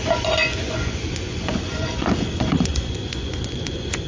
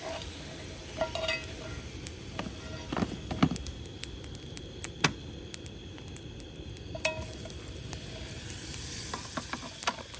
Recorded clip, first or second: second